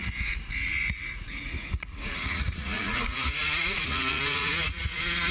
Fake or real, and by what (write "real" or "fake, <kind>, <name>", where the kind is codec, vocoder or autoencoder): fake, vocoder, Vocos